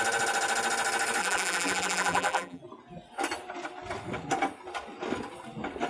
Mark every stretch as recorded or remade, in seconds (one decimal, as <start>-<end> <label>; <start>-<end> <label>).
0.0-1.2 recorded; 1.2-2.6 remade; 2.6-5.9 recorded